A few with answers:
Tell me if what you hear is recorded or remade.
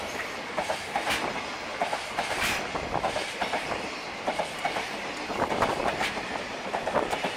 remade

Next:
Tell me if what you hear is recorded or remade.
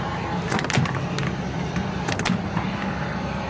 recorded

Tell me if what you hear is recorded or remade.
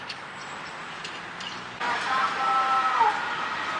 remade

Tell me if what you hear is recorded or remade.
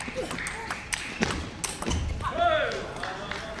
recorded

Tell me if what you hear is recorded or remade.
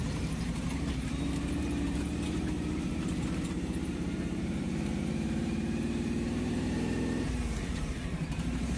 remade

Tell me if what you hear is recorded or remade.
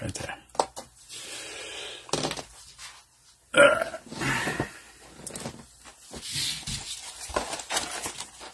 recorded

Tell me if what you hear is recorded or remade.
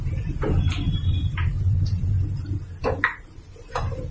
remade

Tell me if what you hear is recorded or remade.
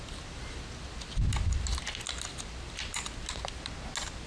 recorded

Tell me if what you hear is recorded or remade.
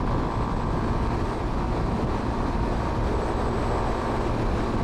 recorded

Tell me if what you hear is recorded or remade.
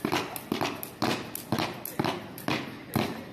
recorded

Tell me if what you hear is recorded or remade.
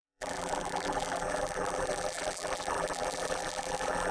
remade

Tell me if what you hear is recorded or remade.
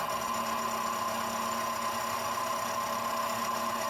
recorded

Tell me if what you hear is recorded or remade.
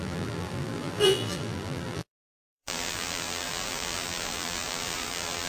remade